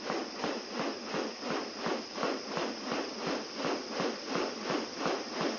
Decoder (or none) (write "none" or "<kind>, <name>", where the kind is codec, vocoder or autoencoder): none